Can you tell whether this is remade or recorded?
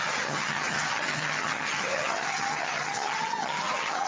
remade